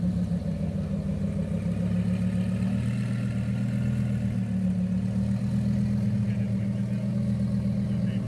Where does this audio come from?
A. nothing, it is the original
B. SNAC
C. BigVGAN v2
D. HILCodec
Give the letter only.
A